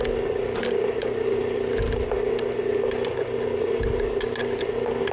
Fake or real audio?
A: real